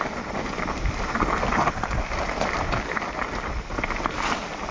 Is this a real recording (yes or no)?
yes